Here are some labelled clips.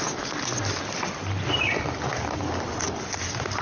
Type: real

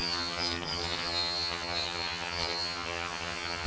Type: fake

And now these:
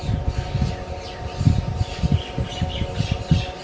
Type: real